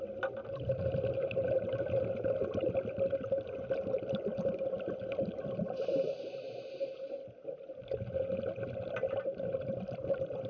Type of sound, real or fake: real